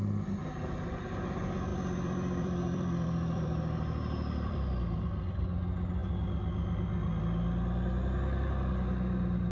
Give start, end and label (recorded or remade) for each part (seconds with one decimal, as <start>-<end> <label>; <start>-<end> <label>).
0.0-1.7 recorded; 1.7-5.4 remade; 5.4-9.5 recorded